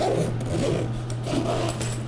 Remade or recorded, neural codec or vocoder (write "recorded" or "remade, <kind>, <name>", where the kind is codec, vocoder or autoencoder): recorded